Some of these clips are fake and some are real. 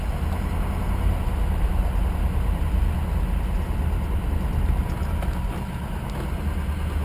real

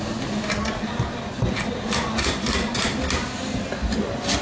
real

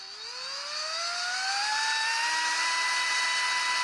real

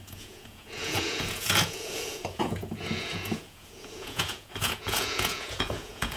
fake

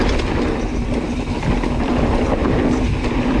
real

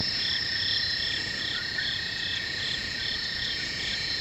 fake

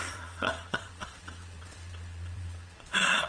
fake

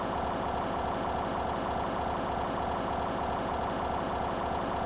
fake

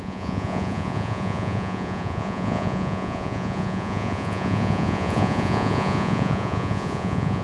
fake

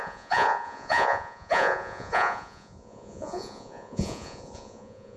fake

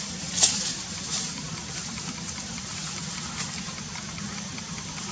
real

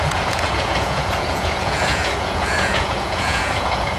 fake